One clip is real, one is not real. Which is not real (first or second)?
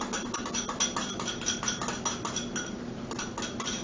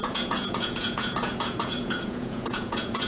second